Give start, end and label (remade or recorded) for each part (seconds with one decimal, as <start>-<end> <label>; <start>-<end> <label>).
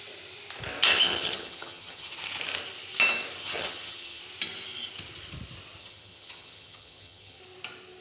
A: 0.0-0.9 recorded; 0.9-2.1 remade; 2.1-3.4 recorded; 3.4-4.2 remade; 4.2-5.8 recorded; 5.8-7.4 remade; 7.4-8.0 recorded